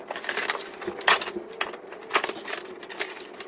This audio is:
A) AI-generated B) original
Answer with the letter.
B